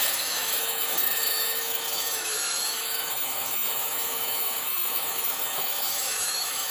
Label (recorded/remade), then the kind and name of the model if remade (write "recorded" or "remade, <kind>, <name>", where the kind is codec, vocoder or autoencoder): remade, autoencoder, DAC-VAE